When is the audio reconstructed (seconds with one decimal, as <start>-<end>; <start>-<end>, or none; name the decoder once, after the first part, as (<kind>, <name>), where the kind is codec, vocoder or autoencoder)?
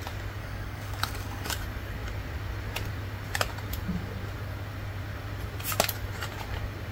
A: 0.4-1.5 (codec, DAC)